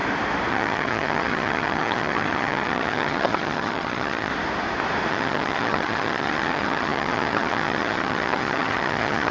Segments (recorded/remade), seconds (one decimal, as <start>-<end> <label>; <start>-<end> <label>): 0.0-0.5 recorded; 0.5-4.3 remade; 4.3-5.1 recorded; 5.1-9.3 remade